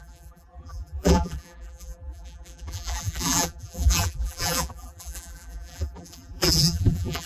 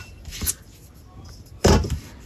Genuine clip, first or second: second